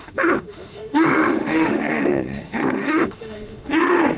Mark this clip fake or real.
fake